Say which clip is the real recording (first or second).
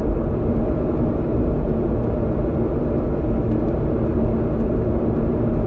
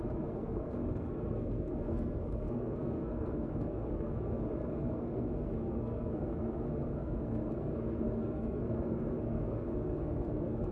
first